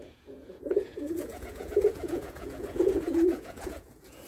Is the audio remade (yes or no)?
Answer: yes